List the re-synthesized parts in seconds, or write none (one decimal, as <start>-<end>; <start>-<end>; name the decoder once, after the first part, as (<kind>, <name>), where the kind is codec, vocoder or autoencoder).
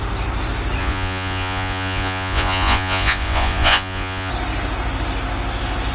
0.8-4.3 (vocoder, Vocos)